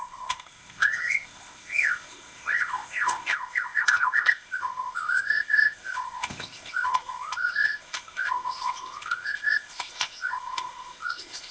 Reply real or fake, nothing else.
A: fake